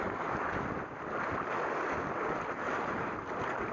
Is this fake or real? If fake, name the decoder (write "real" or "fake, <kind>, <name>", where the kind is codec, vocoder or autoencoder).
real